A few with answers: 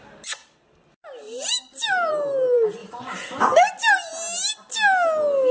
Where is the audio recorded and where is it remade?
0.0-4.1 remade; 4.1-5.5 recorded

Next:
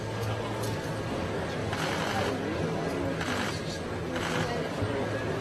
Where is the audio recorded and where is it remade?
0.0-5.4 recorded